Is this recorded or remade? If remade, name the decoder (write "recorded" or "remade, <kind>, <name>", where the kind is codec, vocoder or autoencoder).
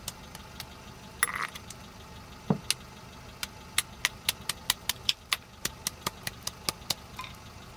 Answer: recorded